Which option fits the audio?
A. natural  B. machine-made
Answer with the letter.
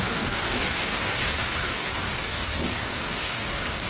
B